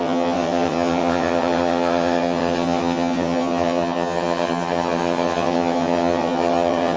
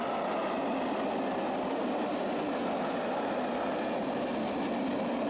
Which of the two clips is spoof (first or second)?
first